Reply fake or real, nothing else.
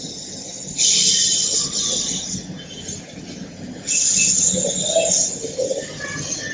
real